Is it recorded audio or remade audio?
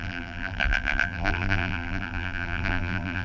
remade